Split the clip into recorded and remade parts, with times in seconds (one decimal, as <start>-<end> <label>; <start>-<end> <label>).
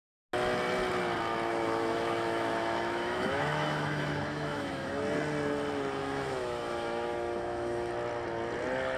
0.0-1.5 recorded; 1.5-4.9 remade; 4.9-6.0 recorded; 6.0-7.9 remade; 7.9-9.0 recorded